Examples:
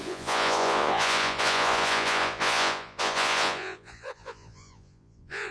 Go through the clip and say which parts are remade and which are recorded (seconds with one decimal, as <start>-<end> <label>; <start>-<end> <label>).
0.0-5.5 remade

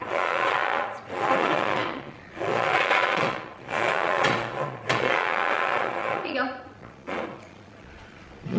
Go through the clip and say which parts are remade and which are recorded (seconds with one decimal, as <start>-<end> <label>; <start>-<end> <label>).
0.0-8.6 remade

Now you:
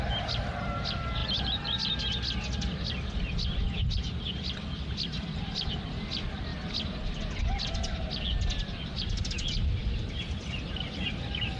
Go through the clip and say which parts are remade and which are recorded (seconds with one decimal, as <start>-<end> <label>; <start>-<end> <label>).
0.0-11.6 recorded

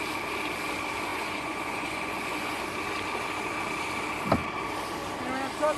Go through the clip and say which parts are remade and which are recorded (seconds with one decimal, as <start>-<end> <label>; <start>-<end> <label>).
0.0-1.1 recorded; 1.1-2.6 remade; 2.6-5.8 recorded

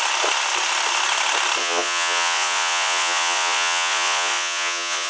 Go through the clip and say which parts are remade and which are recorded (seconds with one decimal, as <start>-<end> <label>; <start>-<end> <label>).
0.0-1.6 recorded; 1.6-5.1 remade

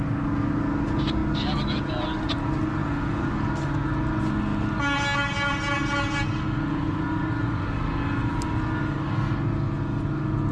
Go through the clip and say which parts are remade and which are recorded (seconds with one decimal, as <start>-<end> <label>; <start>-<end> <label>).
0.0-2.8 recorded; 2.8-3.3 remade; 3.3-10.5 recorded

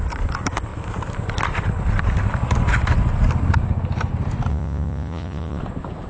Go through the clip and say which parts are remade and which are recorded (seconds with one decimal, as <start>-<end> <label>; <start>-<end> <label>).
0.0-4.5 recorded; 4.5-5.6 remade; 5.6-6.1 recorded

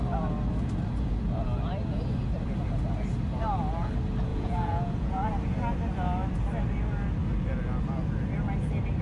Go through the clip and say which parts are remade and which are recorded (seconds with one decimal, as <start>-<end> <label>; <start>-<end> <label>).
0.0-4.3 recorded; 4.3-5.3 remade; 5.3-9.0 recorded